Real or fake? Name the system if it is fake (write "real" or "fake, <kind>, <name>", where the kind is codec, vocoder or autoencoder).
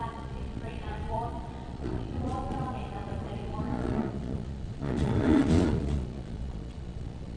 fake, vocoder, Vocos